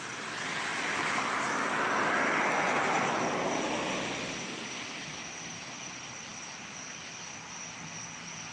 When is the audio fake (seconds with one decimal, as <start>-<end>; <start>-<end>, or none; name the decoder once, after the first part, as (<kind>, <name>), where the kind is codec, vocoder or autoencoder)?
none